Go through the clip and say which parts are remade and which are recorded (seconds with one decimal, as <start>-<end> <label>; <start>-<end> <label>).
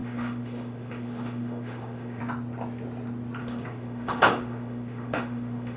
0.0-2.2 remade; 2.2-3.4 recorded; 3.4-5.8 remade